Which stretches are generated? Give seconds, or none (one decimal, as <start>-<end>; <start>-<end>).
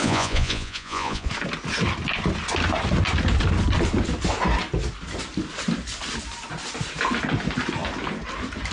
0.0-1.3